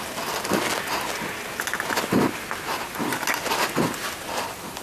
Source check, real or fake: real